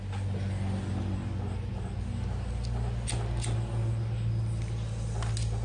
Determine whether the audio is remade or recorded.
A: recorded